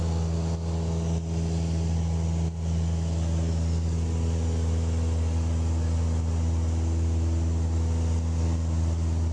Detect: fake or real real